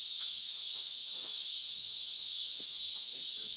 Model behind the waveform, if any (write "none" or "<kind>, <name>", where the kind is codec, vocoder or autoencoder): autoencoder, DAC-VAE